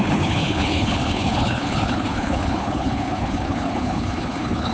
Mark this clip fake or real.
fake